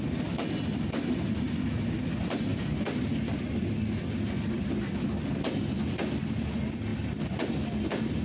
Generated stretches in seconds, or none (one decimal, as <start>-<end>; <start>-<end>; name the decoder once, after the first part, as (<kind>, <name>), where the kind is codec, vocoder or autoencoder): none